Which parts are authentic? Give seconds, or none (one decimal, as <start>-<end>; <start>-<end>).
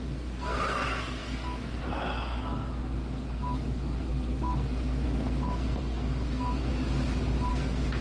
6.7-7.5